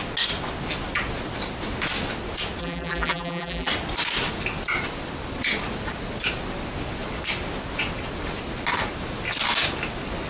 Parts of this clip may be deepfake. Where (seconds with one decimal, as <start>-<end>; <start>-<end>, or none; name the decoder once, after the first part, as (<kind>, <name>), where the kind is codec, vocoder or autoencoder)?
2.6-3.7 (vocoder, BigVGAN v2)